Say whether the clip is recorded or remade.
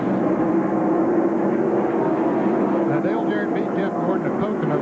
recorded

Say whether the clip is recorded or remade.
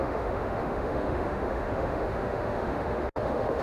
remade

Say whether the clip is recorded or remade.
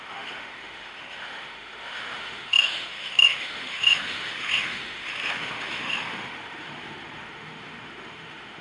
remade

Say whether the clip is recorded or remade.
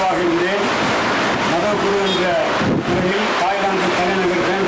recorded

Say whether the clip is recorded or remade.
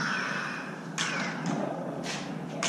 recorded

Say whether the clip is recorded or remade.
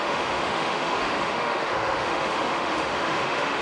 remade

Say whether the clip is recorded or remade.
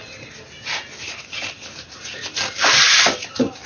recorded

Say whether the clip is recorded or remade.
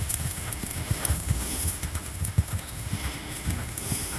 remade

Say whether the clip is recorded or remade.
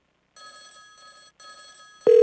recorded